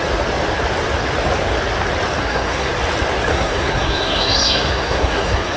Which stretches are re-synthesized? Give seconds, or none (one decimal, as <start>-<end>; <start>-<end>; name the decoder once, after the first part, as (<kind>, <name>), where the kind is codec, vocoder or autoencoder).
2.2-2.7 (codec, SNAC); 3.3-5.6